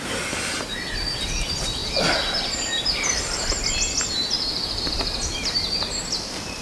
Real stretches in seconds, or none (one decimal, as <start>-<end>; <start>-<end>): none